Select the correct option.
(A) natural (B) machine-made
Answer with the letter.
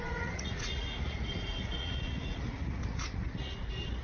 B